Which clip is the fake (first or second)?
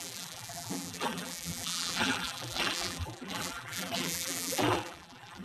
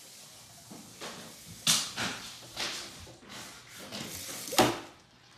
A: first